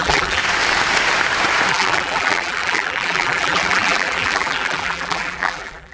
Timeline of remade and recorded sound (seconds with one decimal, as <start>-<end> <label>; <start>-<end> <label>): 0.0-0.4 remade; 0.4-1.7 recorded; 1.7-5.9 remade